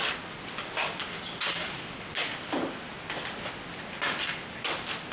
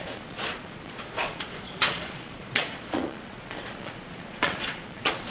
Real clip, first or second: first